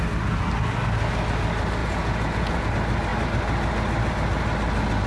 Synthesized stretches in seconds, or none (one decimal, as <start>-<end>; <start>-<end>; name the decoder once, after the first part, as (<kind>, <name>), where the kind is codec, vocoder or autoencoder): 1.8-2.7 (vocoder, Vocos)